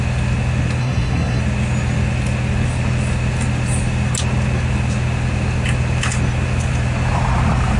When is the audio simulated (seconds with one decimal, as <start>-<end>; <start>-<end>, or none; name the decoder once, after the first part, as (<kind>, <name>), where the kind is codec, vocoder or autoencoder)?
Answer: 0.8-1.4 (codec, SNAC)